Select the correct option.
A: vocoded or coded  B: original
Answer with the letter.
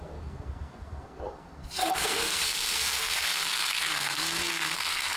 A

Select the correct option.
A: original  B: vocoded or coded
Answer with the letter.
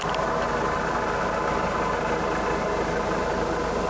A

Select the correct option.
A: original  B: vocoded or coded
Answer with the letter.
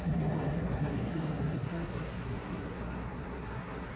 B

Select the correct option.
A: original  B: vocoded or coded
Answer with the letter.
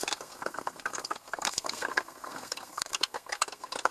B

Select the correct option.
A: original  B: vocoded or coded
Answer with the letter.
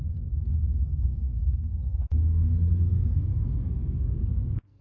B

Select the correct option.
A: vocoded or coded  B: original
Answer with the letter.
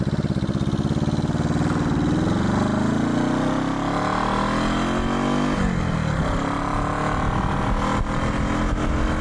B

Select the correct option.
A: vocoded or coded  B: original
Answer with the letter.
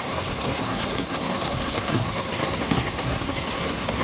A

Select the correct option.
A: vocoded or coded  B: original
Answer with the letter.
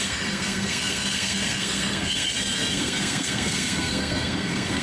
A